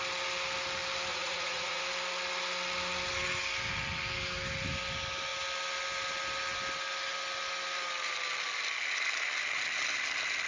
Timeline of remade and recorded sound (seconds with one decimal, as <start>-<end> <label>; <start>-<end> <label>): 0.0-1.1 recorded; 1.1-1.8 remade; 1.8-10.5 recorded